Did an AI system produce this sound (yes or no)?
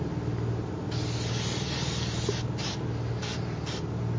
no